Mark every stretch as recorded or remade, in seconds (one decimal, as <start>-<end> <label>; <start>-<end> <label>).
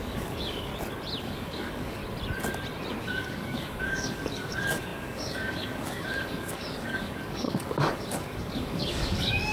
0.0-0.7 remade; 0.7-1.2 recorded; 1.2-2.0 remade; 2.0-3.0 recorded; 3.0-9.5 remade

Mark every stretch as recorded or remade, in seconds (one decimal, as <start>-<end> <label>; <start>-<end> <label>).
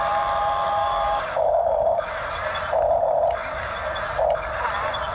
0.0-0.8 recorded; 0.8-2.1 remade; 2.1-5.1 recorded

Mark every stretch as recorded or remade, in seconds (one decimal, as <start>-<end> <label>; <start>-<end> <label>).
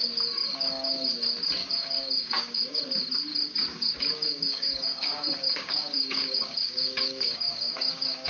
0.0-1.1 remade; 1.1-1.6 recorded; 1.6-2.8 remade; 2.8-3.3 recorded; 3.3-8.3 remade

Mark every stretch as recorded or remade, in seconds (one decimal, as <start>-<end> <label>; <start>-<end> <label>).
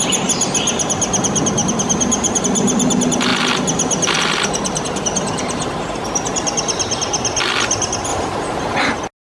0.0-9.4 recorded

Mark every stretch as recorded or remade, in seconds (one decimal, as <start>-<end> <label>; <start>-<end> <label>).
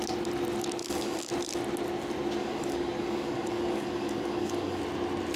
0.0-0.8 recorded; 0.8-1.3 remade; 1.3-2.4 recorded; 2.4-4.8 remade; 4.8-5.4 recorded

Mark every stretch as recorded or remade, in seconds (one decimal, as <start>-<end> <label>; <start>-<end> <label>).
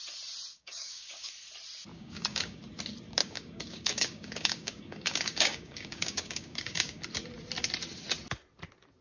0.0-0.5 recorded; 0.5-1.3 remade; 1.3-1.9 recorded; 1.9-2.6 remade; 2.6-3.2 recorded; 3.2-7.0 remade; 7.0-9.0 recorded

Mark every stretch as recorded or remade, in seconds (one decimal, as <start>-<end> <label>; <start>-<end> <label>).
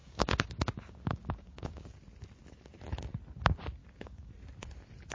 0.0-1.9 remade; 1.9-3.8 recorded; 3.8-4.3 remade; 4.3-5.1 recorded